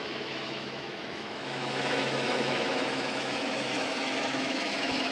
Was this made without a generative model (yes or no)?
no